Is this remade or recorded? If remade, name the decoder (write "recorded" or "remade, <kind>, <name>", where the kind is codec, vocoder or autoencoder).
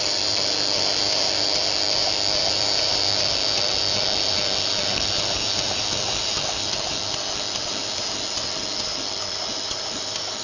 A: remade, vocoder, BigVGAN v2